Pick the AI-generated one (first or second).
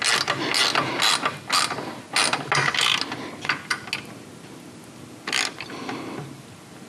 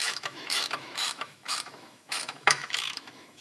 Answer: second